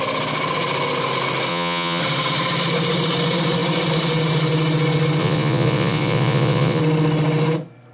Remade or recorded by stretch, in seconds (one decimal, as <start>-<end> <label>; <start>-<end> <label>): 0.0-1.5 recorded; 1.5-2.0 remade; 2.0-5.2 recorded; 5.2-6.8 remade; 6.8-7.9 recorded